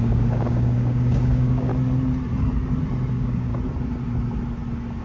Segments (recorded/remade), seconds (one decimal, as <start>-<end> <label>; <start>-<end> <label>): 0.0-1.7 remade; 1.7-3.1 recorded; 3.1-3.5 remade; 3.5-5.0 recorded